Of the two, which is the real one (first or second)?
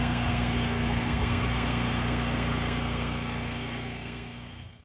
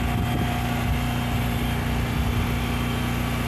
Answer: second